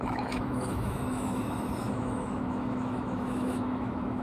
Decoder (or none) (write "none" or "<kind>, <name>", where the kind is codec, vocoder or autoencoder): autoencoder, DAC-VAE